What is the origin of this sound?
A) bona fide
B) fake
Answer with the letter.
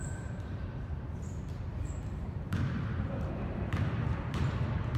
B